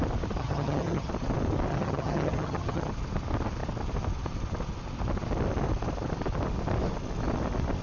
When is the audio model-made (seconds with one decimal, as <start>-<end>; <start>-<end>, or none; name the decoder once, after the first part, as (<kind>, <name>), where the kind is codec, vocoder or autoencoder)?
0.4-1.1 (vocoder, HiFi-GAN); 1.7-2.9